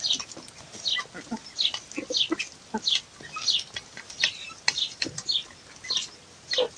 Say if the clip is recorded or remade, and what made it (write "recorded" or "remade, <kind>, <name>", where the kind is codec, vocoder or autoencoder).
recorded